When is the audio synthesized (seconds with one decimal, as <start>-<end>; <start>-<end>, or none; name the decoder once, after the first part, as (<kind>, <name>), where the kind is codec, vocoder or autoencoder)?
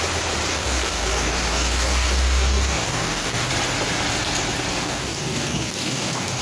0.5-3.5 (codec, DAC); 4.7-6.4